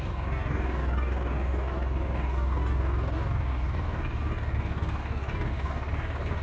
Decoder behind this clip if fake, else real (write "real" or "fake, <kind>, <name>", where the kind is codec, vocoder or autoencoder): fake, codec, DAC